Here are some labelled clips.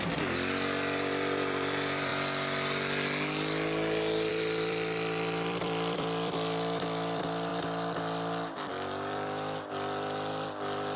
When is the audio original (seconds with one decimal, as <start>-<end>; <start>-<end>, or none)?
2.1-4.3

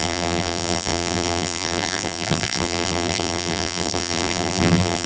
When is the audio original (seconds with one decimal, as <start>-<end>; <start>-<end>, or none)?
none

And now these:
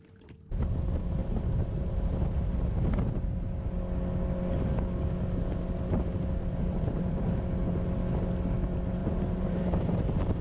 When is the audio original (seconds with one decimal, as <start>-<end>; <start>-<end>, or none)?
0.0-1.2; 2.5-9.0

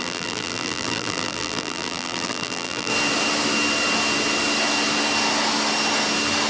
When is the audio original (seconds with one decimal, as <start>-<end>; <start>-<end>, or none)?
2.9-6.5